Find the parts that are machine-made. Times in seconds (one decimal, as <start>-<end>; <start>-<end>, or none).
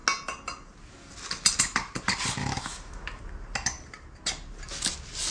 2.4-3.2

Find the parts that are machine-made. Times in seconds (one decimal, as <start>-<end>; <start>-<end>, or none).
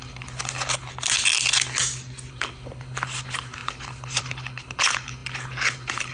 0.0-0.9; 2.3-6.1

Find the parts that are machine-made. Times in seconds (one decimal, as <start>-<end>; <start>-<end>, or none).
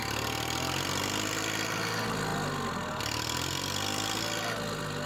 none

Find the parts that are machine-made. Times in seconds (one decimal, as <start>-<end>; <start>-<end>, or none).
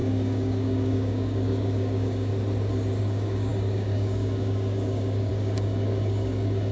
0.0-2.3; 3.0-6.7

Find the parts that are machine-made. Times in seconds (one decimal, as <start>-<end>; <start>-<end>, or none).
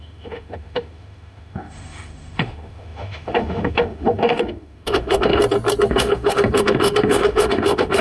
0.0-5.4; 5.9-8.0